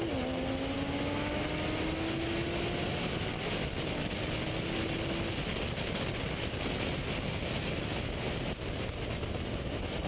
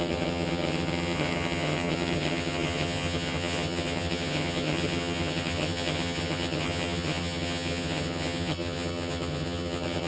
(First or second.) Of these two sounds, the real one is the first